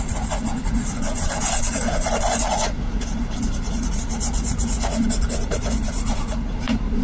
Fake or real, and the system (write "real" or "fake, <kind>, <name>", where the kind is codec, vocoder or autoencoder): fake, vocoder, Vocos